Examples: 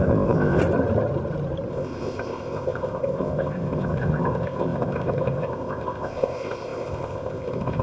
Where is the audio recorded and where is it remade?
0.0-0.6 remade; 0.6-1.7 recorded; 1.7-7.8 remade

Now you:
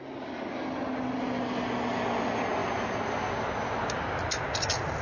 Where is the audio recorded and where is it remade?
0.0-5.0 recorded

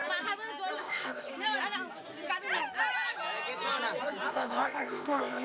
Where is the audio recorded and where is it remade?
0.0-0.8 recorded; 0.8-1.3 remade; 1.3-4.3 recorded; 4.3-5.4 remade

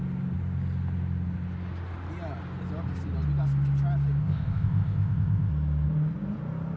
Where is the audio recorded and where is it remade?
0.0-4.2 recorded; 4.2-5.5 remade; 5.5-6.8 recorded

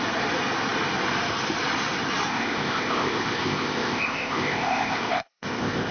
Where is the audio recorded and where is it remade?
0.0-2.3 recorded; 2.3-5.9 remade

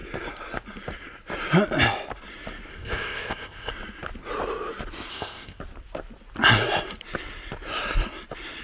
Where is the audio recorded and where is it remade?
0.0-2.7 recorded; 2.7-3.7 remade; 3.7-5.1 recorded; 5.1-5.6 remade; 5.6-8.6 recorded

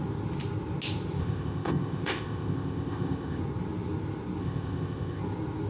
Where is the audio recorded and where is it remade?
0.0-1.2 recorded; 1.2-3.4 remade; 3.4-4.4 recorded; 4.4-5.2 remade; 5.2-5.7 recorded